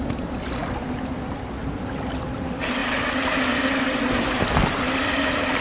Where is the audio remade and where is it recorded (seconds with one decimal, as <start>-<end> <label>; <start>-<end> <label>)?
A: 0.0-5.6 recorded